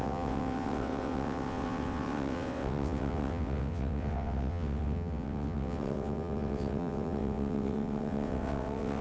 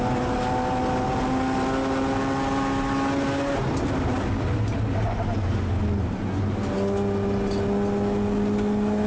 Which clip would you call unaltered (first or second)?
second